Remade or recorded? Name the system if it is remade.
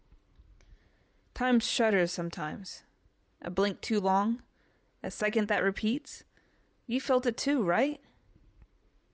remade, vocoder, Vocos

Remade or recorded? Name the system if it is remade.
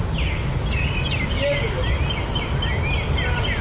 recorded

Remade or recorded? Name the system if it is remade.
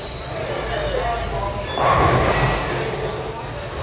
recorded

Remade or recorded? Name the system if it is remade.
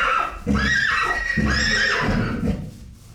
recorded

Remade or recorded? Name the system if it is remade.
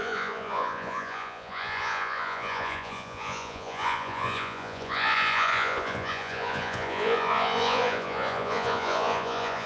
remade, vocoder, Vocos